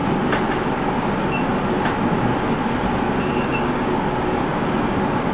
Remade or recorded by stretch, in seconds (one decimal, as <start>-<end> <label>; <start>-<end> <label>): 0.0-3.2 recorded; 3.2-5.3 remade